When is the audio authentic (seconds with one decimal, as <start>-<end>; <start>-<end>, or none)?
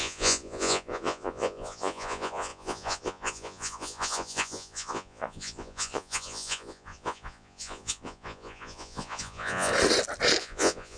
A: 9.7-10.4